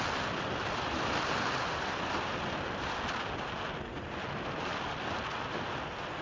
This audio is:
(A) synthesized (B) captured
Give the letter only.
B